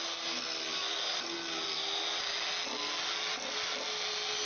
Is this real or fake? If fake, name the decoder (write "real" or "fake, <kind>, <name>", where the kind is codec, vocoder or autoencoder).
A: real